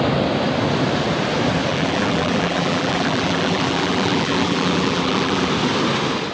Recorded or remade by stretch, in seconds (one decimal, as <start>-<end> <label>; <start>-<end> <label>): 0.0-1.7 recorded; 1.7-5.5 remade; 5.5-6.3 recorded